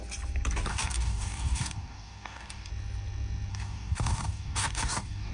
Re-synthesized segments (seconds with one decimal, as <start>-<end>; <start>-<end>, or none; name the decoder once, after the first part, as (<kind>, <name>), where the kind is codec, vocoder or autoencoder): 0.7-2.7 (codec, DAC); 3.5-5.3